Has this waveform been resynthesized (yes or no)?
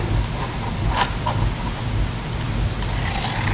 no